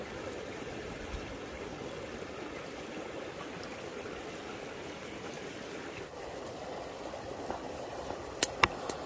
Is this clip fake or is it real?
real